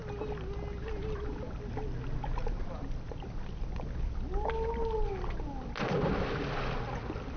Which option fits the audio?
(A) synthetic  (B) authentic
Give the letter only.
B